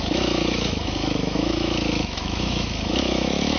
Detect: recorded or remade remade